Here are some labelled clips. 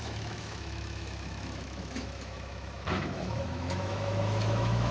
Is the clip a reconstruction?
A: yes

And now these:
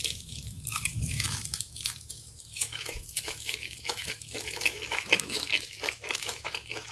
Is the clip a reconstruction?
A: yes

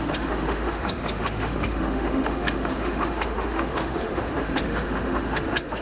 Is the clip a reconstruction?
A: yes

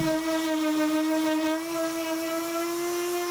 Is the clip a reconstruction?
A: no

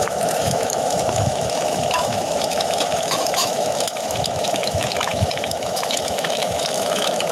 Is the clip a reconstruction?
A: yes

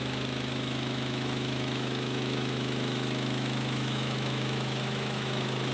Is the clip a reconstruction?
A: yes